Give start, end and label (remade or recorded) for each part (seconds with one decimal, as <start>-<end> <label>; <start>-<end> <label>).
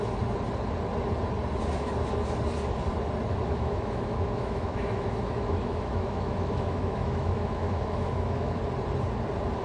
0.0-3.4 recorded; 3.4-8.6 remade; 8.6-9.6 recorded